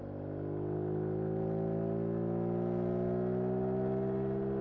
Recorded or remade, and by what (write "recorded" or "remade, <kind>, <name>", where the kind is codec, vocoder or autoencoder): recorded